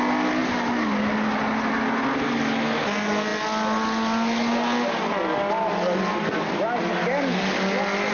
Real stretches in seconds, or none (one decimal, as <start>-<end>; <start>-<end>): 0.0-8.1